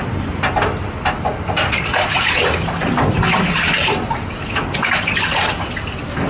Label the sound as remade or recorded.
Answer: recorded